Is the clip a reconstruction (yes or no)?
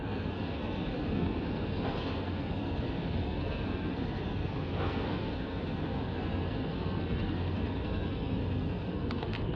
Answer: yes